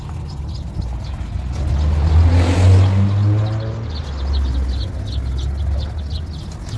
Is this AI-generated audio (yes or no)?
no